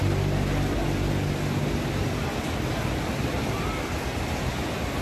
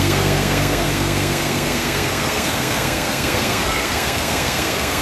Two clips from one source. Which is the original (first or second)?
first